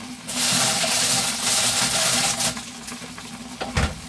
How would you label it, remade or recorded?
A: recorded